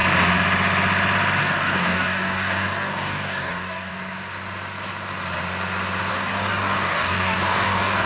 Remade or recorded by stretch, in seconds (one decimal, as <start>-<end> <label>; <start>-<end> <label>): 0.0-1.4 recorded; 1.4-3.9 remade; 3.9-6.1 recorded; 6.1-8.1 remade